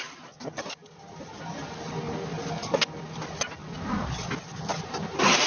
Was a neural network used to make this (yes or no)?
no